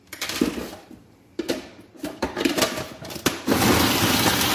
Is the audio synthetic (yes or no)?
yes